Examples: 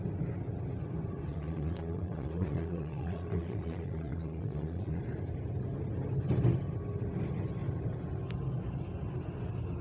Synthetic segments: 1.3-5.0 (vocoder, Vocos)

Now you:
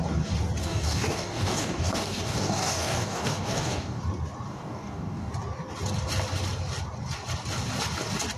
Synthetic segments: 0.6-4.0 (codec, DAC); 4.5-5.3

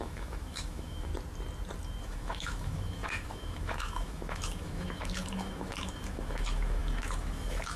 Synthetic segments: 0.0-1.1 (autoencoder, DAC-VAE); 2.0-7.8